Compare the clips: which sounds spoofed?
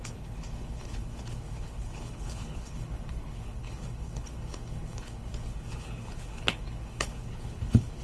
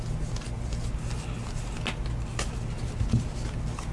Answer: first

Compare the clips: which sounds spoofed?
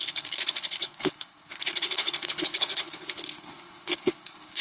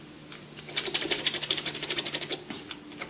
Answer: first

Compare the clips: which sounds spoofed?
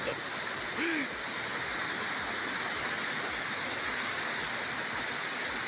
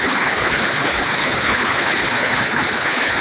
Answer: second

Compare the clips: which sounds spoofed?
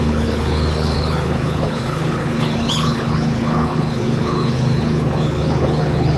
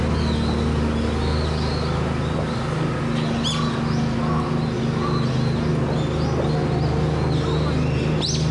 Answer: first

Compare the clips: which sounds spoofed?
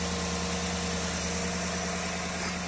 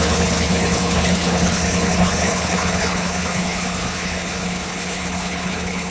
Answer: second